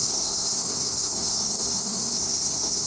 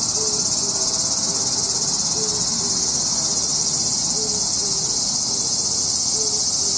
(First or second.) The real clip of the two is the second